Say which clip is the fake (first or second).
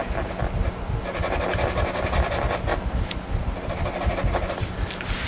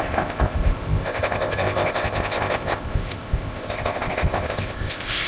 second